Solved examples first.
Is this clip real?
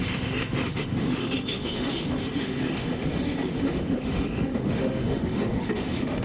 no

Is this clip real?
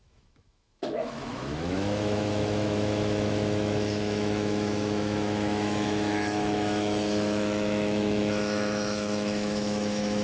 no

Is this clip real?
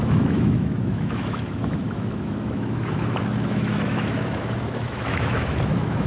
no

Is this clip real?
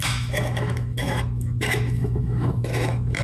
no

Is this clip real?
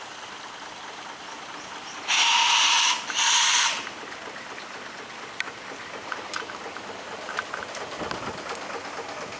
yes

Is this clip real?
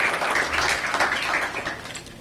yes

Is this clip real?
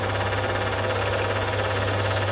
yes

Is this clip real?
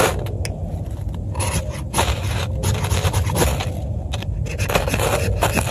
yes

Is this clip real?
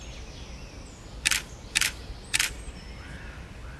yes